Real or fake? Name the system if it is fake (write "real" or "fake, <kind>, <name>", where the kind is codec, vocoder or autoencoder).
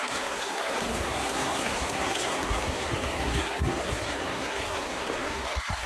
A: fake, codec, SNAC